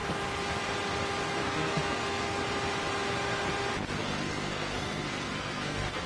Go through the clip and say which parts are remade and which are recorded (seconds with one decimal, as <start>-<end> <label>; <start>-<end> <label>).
0.0-1.4 recorded; 1.4-2.4 remade; 2.4-4.0 recorded; 4.0-6.1 remade